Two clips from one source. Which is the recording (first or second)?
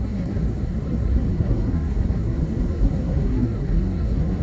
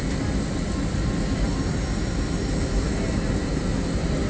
second